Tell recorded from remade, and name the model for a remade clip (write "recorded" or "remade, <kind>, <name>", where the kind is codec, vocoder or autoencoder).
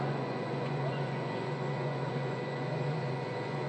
remade, vocoder, Vocos